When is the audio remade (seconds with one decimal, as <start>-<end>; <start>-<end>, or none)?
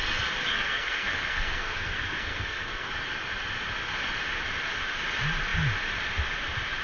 0.5-2.9